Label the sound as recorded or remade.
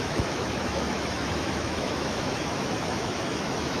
remade